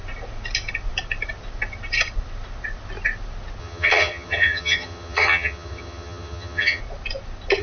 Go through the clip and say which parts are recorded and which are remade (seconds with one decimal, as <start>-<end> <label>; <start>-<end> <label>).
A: 0.0-3.6 recorded; 3.6-6.8 remade; 6.8-7.6 recorded